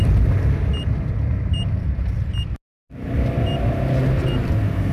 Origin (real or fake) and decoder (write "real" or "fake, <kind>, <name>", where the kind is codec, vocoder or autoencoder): real